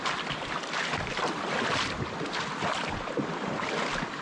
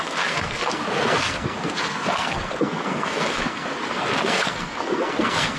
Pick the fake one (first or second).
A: second